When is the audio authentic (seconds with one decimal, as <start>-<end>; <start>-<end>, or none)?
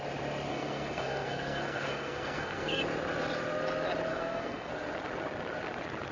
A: 0.0-0.5; 2.8-4.1; 4.7-6.1